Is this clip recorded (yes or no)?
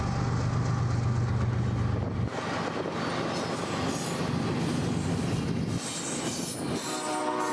yes